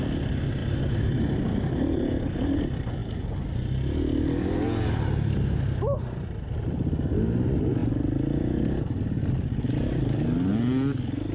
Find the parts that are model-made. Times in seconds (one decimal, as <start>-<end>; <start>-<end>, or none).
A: none